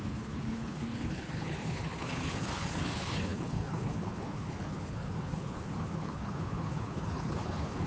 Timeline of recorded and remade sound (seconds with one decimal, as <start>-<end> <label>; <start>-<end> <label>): 0.0-7.9 remade